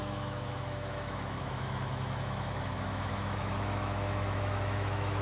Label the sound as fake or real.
fake